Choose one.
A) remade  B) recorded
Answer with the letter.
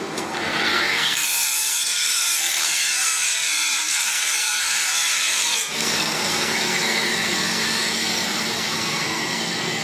A